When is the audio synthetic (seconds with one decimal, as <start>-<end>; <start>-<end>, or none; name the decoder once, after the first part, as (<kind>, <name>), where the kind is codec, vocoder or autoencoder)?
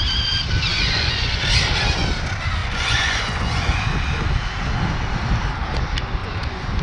0.7-1.4 (vocoder, Vocos); 2.6-3.8; 6.2-6.8